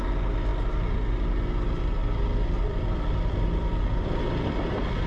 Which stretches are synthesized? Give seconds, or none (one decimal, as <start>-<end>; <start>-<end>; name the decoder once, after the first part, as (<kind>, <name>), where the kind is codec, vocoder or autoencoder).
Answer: 2.0-5.1 (vocoder, BigVGAN v2)